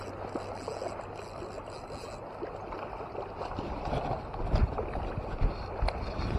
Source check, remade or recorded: recorded